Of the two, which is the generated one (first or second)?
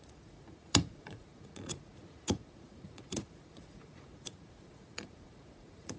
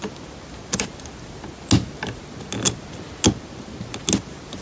first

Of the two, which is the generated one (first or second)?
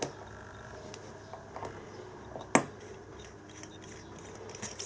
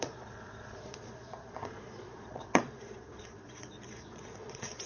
second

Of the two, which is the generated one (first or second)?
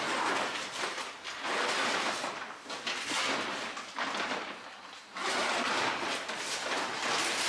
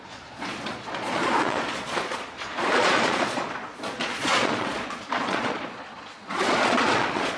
second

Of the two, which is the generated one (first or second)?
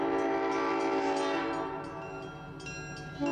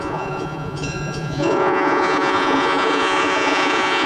second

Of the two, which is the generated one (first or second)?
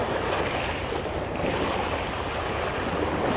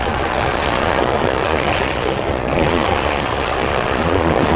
second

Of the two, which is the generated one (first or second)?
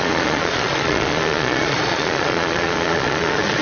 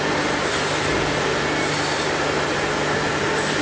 first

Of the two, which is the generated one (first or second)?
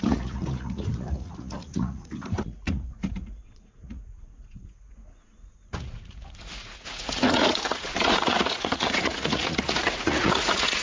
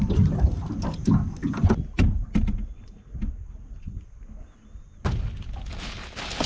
first